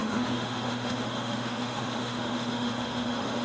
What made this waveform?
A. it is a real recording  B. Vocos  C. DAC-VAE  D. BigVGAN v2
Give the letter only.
C